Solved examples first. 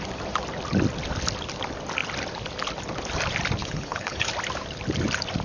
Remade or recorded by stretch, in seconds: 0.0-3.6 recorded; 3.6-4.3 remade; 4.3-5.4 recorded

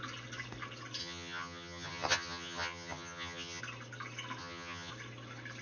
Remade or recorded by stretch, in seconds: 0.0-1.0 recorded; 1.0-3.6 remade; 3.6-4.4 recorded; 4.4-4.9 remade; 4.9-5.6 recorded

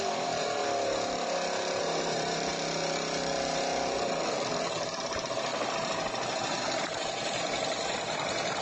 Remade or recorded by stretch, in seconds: 0.0-0.6 remade; 0.6-1.8 recorded; 1.8-2.5 remade; 2.5-4.9 recorded; 4.9-5.5 remade; 5.5-6.8 recorded; 6.8-8.6 remade